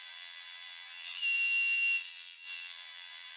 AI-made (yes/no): yes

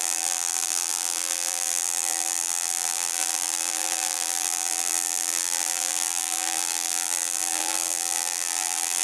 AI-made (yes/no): yes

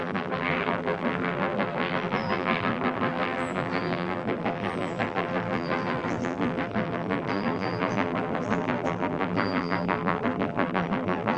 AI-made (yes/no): yes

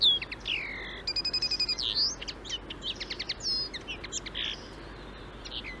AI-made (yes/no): no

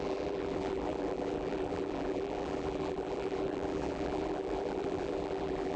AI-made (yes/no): yes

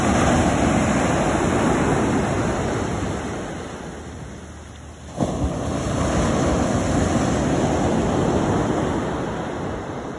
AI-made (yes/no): no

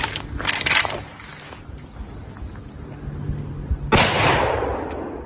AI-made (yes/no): no